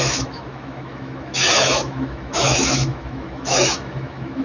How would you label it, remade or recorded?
remade